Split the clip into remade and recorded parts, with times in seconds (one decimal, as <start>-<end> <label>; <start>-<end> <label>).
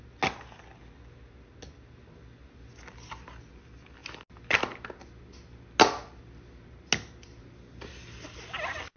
0.0-9.0 recorded